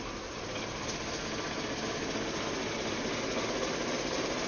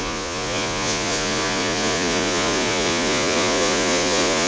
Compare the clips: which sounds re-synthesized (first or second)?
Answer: second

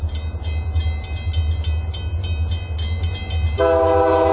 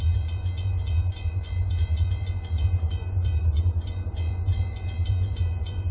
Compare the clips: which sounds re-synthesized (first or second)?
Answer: second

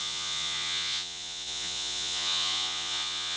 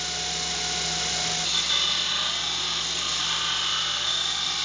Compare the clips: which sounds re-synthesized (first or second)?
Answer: first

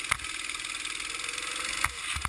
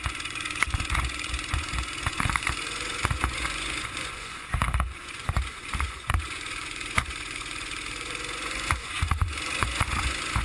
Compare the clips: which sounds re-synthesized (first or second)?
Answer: second